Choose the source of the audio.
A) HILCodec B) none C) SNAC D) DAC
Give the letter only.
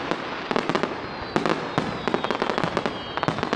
B